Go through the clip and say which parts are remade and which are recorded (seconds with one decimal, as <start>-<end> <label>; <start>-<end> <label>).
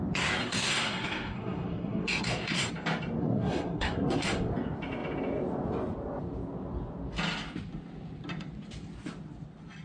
0.0-0.4 recorded; 0.4-2.7 remade; 2.7-3.2 recorded; 3.2-4.5 remade; 4.5-9.8 recorded